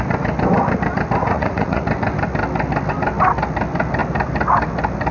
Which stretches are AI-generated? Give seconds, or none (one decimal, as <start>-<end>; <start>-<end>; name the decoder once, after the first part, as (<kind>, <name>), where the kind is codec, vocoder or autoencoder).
1.2-1.8 (vocoder, Vocos)